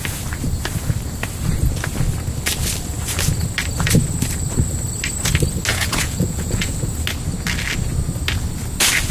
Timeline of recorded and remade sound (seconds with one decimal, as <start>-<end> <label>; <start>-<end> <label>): 0.0-5.7 recorded; 5.7-6.7 remade; 6.7-9.1 recorded